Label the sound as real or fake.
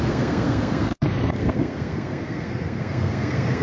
fake